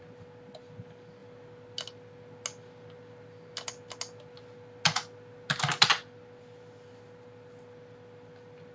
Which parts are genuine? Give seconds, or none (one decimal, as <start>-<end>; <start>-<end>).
0.0-8.7